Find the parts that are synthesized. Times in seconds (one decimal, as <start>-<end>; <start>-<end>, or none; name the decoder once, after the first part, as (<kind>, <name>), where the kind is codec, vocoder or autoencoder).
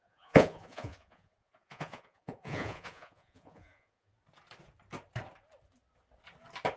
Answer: 0.0-4.1 (vocoder, Vocos)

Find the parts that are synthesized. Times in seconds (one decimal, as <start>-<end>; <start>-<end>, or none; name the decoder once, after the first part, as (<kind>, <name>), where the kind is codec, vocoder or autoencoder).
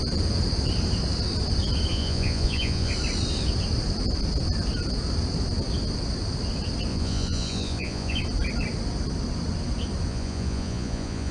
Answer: 1.9-2.9 (vocoder, Vocos); 6.9-8.2; 10.1-11.3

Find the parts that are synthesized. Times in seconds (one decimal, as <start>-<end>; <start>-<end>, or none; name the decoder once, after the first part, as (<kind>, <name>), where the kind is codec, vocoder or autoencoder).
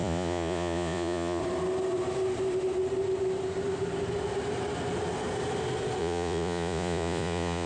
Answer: 0.0-1.4 (vocoder, Vocos); 6.0-7.7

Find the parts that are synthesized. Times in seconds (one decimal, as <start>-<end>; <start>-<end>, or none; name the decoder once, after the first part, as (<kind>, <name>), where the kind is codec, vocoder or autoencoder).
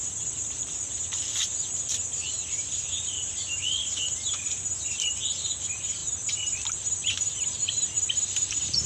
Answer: none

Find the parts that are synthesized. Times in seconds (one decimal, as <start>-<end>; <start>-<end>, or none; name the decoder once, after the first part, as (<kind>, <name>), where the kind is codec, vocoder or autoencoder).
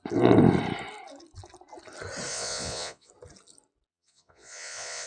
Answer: 2.3-3.1 (vocoder, Vocos); 3.9-5.1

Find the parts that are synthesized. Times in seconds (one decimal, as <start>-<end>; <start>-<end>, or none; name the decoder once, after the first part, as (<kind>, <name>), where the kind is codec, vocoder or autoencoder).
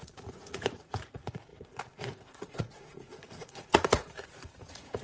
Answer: 0.0-5.0 (vocoder, Vocos)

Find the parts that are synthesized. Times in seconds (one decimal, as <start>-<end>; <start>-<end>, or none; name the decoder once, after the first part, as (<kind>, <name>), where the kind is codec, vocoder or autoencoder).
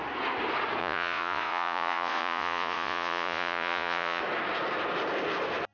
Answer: 0.8-4.2 (vocoder, Vocos)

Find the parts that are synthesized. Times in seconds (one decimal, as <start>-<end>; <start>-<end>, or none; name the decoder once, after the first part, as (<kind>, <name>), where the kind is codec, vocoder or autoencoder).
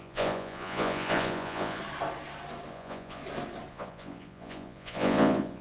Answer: 0.0-1.8 (vocoder, Vocos); 2.7-3.2; 3.7-5.6